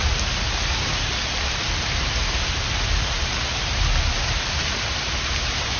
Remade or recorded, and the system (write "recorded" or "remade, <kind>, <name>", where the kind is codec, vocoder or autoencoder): recorded